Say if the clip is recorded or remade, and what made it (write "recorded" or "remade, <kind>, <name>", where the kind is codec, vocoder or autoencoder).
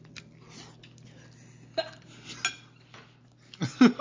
recorded